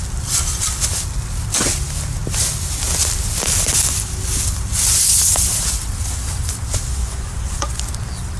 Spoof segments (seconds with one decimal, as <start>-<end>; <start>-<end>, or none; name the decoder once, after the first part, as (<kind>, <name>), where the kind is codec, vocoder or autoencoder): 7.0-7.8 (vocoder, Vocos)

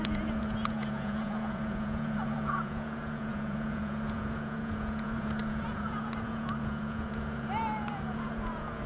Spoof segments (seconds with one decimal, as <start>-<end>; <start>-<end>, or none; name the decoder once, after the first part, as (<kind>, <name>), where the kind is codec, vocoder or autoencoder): 0.0-8.9 (vocoder, Vocos)

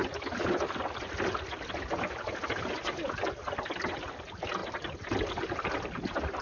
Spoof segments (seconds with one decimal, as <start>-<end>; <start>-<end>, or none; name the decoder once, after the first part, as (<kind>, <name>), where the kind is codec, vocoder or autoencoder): none

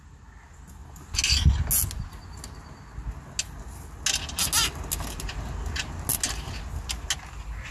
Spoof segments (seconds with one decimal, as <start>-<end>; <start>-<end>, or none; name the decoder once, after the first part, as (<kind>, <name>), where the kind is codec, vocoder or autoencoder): none